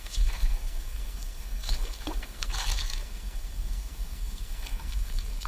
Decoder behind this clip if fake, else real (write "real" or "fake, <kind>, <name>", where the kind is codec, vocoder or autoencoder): fake, codec, SNAC